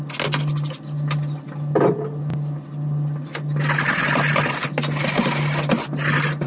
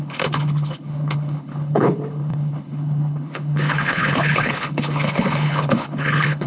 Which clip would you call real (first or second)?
first